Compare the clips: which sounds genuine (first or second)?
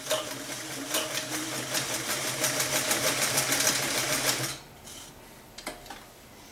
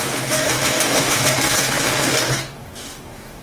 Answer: first